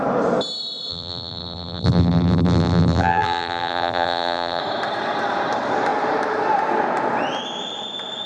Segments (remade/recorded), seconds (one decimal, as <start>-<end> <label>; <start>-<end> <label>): 0.0-0.9 recorded; 0.9-4.6 remade; 4.6-8.3 recorded

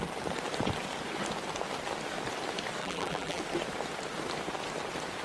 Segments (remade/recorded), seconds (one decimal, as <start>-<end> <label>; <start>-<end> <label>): 0.0-2.8 recorded; 2.8-3.4 remade; 3.4-5.2 recorded

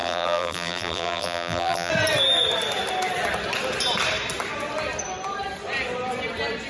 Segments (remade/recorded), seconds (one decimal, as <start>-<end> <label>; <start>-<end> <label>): 0.0-1.9 remade; 1.9-6.7 recorded

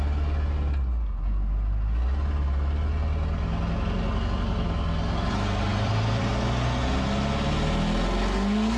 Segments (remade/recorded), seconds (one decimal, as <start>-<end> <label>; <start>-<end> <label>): 0.0-5.7 recorded; 5.7-6.3 remade; 6.3-8.8 recorded

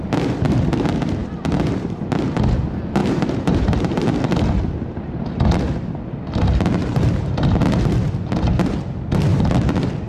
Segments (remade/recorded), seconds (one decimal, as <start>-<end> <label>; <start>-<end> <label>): 0.0-3.0 recorded; 3.0-4.0 remade; 4.0-6.8 recorded; 6.8-7.3 remade; 7.3-9.3 recorded; 9.3-10.1 remade

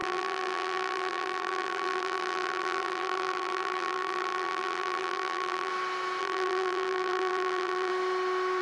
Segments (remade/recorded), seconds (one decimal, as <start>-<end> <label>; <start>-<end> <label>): 0.0-5.7 remade; 5.7-6.2 recorded; 6.2-7.9 remade; 7.9-8.6 recorded

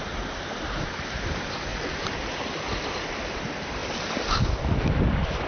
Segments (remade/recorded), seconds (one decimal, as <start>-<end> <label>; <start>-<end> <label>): 0.0-1.7 remade; 1.7-3.3 recorded; 3.3-3.8 remade; 3.8-5.5 recorded

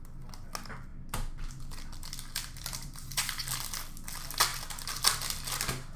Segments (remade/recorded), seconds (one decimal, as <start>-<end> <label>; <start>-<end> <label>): 0.0-2.4 recorded; 2.4-3.2 remade; 3.2-6.0 recorded